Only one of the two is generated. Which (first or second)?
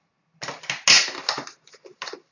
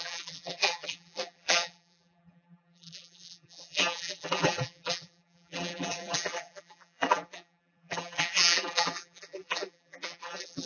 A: second